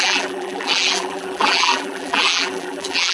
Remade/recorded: remade